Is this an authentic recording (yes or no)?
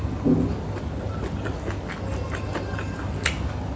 yes